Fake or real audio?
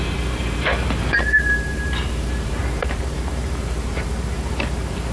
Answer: fake